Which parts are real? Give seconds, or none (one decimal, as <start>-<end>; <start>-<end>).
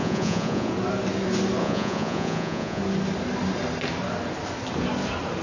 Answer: 0.7-1.6; 2.8-5.4